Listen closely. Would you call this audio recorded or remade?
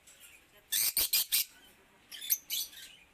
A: recorded